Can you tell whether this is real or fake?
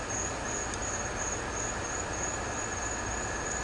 real